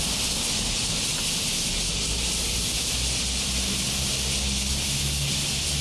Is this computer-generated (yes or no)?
no